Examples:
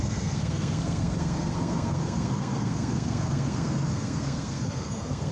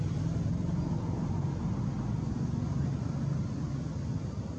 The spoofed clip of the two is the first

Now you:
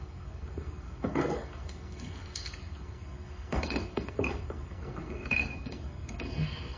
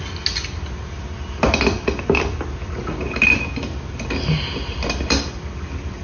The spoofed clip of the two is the first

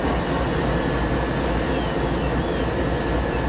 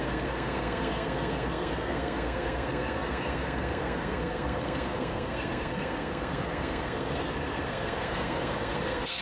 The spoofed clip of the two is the second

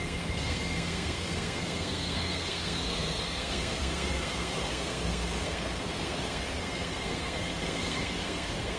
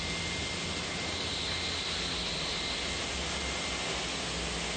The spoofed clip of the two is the first